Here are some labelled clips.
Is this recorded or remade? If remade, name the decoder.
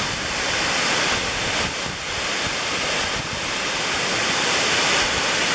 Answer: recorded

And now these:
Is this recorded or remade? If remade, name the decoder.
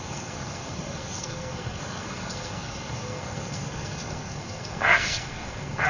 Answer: remade, codec, SNAC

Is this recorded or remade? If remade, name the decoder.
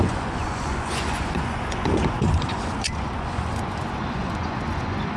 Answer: remade, vocoder, Vocos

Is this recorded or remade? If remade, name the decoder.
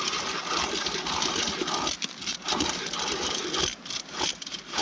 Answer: recorded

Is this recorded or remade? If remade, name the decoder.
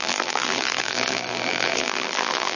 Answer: remade, vocoder, BigVGAN v2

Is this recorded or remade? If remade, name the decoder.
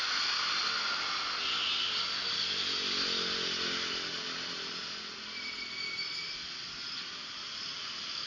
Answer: recorded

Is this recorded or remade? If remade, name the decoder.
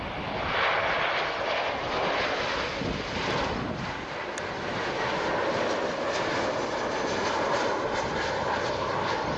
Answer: recorded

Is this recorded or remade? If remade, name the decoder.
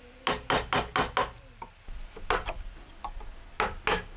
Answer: recorded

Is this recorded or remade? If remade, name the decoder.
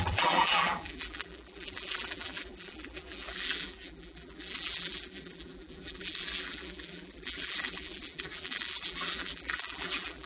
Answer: remade, vocoder, BigVGAN v2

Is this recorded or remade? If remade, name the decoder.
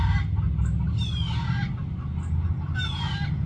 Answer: recorded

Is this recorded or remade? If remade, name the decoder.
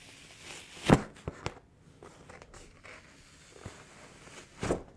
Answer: recorded